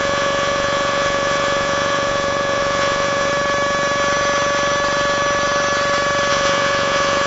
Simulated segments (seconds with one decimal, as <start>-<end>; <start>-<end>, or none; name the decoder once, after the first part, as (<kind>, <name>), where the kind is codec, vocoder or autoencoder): 0.0-3.3 (vocoder, Vocos); 6.3-7.3